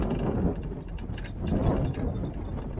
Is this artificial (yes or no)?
no